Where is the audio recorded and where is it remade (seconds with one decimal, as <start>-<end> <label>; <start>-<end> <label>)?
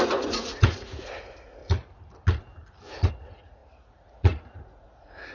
0.0-1.6 remade; 1.6-3.1 recorded; 3.1-5.3 remade